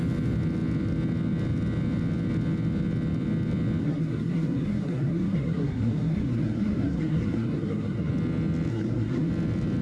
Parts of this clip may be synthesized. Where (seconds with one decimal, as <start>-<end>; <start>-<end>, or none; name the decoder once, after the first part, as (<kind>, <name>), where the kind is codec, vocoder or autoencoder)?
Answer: 3.8-8.1 (codec, SNAC); 8.7-9.3

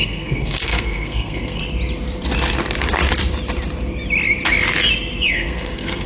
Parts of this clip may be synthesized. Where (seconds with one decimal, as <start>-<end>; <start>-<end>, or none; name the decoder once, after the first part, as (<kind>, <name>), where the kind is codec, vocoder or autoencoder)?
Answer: 0.0-1.6 (codec, SNAC); 5.3-6.1

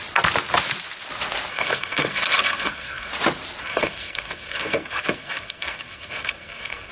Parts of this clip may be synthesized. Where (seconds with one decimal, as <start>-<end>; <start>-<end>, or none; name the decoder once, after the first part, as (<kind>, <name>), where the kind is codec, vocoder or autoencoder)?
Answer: 1.5-3.1 (codec, SNAC); 3.6-6.9

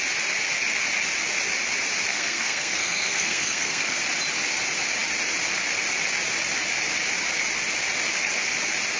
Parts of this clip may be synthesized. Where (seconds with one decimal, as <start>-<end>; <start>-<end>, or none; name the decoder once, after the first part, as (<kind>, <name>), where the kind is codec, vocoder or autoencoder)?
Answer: 2.1-4.0 (codec, SNAC)

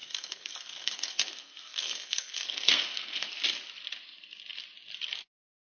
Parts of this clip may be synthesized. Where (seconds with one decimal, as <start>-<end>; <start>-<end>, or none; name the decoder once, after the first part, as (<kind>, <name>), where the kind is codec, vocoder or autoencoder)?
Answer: 0.0-3.4 (codec, SNAC)

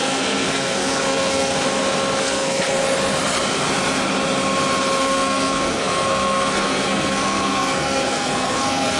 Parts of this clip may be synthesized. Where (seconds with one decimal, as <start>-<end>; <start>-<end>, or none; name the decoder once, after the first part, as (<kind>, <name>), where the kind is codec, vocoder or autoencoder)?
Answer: 0.0-1.5 (codec, SNAC); 2.2-2.8; 5.0-9.0